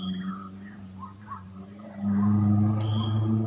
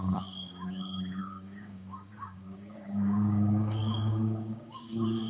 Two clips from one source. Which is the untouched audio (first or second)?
first